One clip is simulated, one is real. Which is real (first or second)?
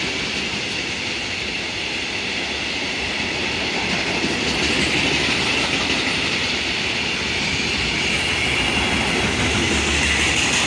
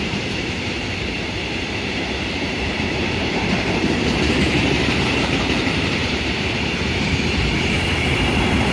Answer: first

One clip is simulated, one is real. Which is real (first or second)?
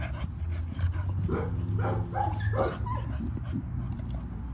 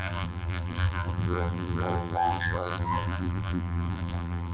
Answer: first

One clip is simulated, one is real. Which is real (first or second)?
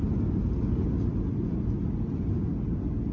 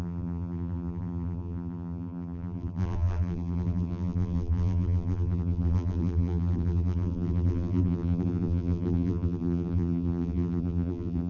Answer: first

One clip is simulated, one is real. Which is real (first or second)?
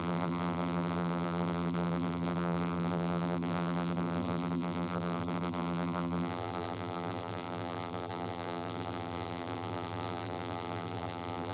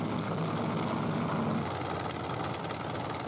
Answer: second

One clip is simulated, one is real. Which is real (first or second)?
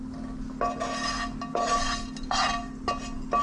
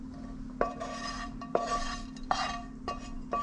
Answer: first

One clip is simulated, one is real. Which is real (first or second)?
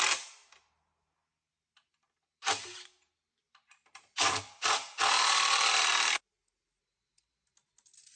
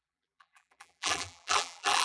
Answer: first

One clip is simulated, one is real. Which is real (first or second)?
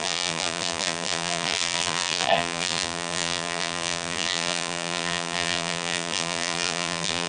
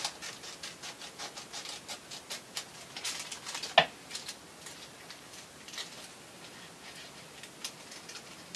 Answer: second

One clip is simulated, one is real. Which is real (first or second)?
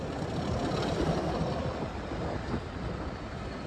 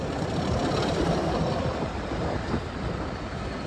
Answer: first